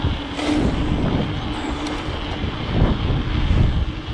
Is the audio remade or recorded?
recorded